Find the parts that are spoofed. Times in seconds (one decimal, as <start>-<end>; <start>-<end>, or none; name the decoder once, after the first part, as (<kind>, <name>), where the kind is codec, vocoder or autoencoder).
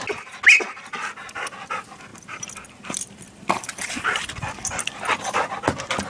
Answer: 2.1-5.0 (vocoder, BigVGAN v2)